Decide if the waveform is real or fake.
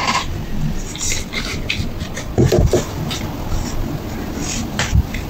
fake